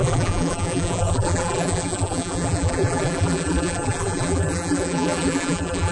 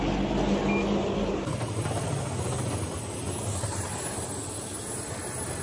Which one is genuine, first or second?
second